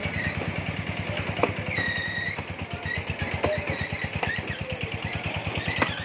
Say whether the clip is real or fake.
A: real